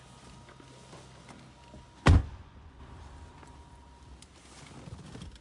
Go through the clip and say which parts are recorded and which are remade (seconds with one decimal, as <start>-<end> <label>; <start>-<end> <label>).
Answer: 0.0-2.2 recorded; 2.2-2.8 remade; 2.8-5.4 recorded